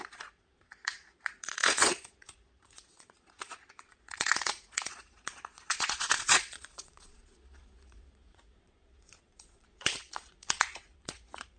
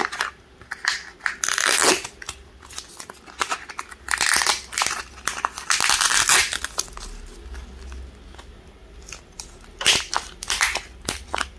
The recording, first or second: second